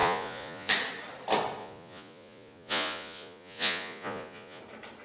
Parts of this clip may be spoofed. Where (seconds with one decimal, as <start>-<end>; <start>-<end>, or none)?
0.0-0.7; 1.6-4.6